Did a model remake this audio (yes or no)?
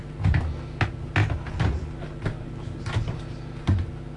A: no